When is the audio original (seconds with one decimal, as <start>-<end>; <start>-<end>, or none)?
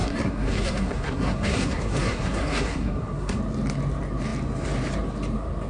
3.4-5.7